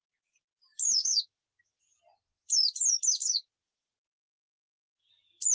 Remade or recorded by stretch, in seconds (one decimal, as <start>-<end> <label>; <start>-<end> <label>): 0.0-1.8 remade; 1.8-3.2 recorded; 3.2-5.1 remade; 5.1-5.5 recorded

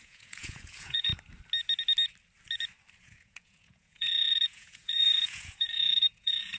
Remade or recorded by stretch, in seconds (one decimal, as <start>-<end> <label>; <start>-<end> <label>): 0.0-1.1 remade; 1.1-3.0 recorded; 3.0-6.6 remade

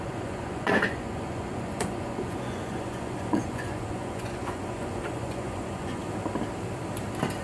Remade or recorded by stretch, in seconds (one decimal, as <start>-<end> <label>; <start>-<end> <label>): 0.0-6.0 remade; 6.0-7.4 recorded

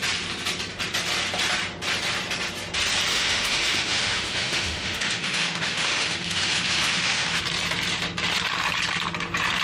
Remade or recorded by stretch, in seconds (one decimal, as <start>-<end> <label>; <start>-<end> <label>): 0.0-3.1 recorded; 3.1-7.4 remade; 7.4-9.6 recorded